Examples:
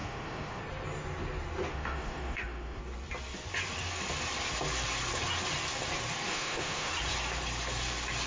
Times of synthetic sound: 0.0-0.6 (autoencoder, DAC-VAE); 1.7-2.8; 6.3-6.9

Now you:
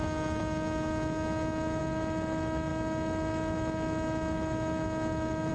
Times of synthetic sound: 0.0-5.5 (autoencoder, DAC-VAE)